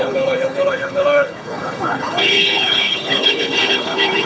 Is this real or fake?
fake